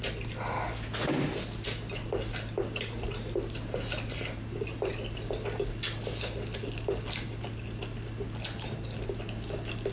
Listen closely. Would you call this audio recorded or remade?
recorded